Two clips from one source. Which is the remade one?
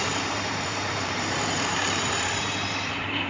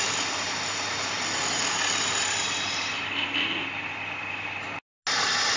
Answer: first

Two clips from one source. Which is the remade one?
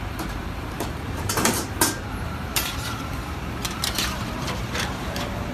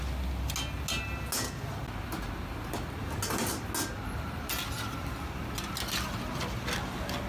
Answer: first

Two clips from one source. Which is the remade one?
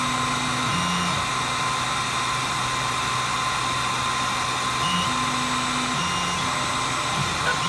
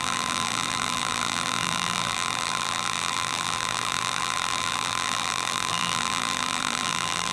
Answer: second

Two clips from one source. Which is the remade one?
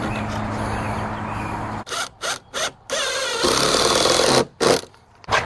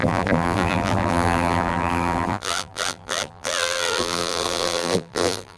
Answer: second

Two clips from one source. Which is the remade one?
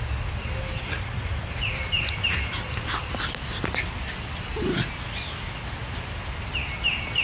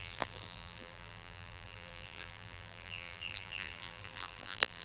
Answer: second